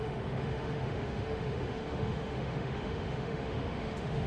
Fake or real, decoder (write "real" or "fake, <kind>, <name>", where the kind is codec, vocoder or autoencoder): fake, autoencoder, DAC-VAE